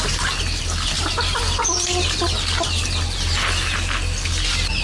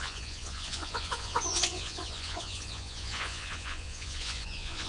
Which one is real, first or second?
first